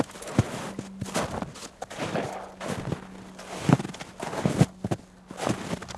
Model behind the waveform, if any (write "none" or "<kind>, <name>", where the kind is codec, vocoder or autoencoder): none